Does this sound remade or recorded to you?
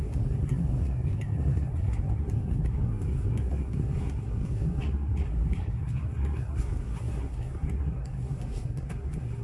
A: remade